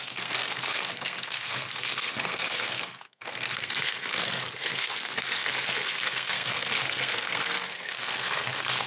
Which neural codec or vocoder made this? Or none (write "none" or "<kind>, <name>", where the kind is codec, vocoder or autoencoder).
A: codec, SNAC